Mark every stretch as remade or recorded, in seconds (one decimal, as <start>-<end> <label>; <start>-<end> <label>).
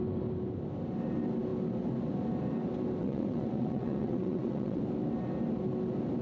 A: 0.0-3.0 recorded; 3.0-4.8 remade; 4.8-6.2 recorded